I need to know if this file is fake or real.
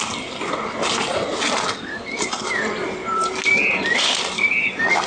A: real